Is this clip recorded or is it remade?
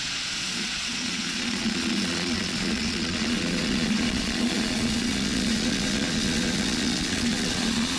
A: remade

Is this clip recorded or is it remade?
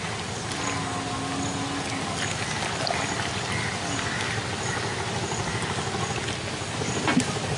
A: recorded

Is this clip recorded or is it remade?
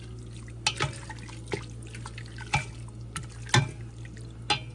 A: recorded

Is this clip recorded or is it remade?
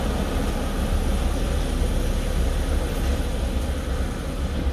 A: recorded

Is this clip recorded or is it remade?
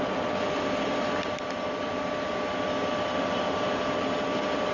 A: recorded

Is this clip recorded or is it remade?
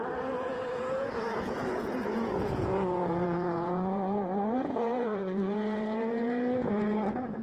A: remade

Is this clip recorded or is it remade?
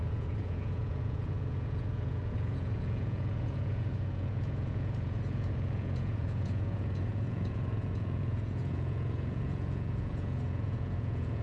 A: remade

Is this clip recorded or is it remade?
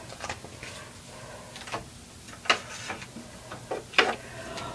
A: recorded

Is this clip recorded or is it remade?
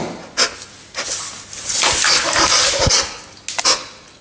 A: recorded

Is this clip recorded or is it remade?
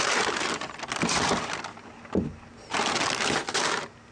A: recorded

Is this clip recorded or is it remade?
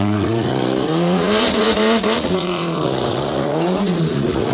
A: remade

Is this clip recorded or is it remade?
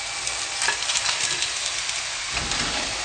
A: recorded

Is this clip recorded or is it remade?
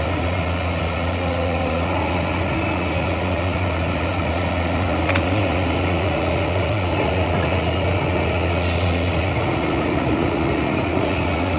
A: remade